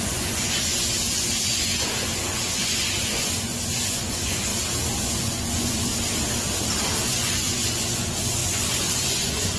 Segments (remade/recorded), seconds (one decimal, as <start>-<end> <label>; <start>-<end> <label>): 0.0-4.5 remade; 4.5-5.0 recorded; 5.0-5.9 remade; 5.9-7.0 recorded; 7.0-9.6 remade